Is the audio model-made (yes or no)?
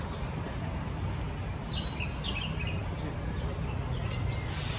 no